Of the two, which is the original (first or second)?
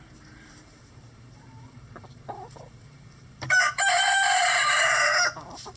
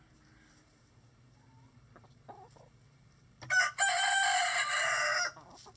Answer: second